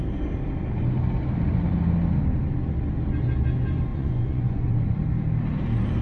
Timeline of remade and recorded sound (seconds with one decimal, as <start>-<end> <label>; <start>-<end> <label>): 0.0-3.9 recorded; 3.9-4.7 remade; 4.7-6.0 recorded